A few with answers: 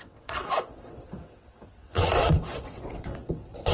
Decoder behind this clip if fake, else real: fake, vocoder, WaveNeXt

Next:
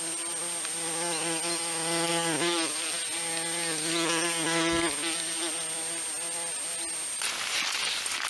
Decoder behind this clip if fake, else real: real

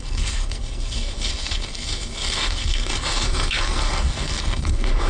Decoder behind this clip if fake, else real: fake, codec, SNAC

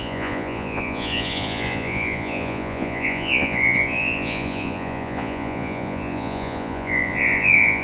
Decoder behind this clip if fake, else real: fake, vocoder, Vocos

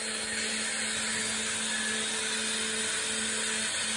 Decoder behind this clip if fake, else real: real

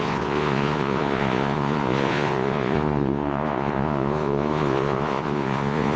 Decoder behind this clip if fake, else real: fake, vocoder, Vocos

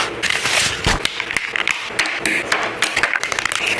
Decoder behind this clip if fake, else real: real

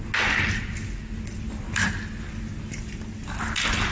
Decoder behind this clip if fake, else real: real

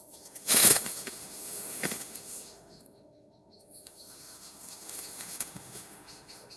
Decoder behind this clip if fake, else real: fake, autoencoder, DAC-VAE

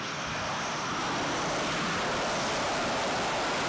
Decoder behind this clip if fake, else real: real